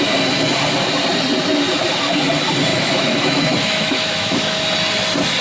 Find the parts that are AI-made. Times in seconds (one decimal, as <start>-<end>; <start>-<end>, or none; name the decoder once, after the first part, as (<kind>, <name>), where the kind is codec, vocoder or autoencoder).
2.7-4.6 (autoencoder, DAC-VAE)